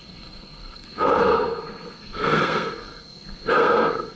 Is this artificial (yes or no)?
yes